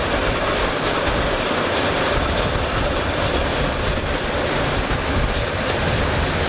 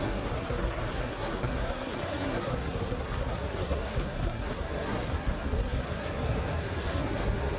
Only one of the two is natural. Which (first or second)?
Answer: first